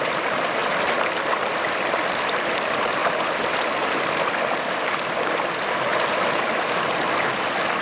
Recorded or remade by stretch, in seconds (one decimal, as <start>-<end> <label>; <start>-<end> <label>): 0.0-0.6 remade; 0.6-1.5 recorded; 1.5-5.9 remade; 5.9-6.4 recorded; 6.4-7.8 remade